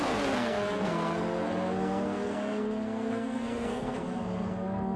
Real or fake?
fake